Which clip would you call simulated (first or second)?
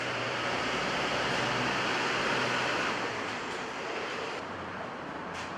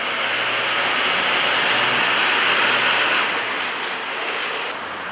first